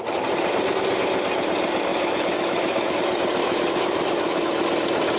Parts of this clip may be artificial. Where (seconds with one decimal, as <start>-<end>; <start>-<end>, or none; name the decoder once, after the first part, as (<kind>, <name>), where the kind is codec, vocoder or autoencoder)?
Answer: 1.9-3.0 (autoencoder, DAC-VAE); 3.4-4.5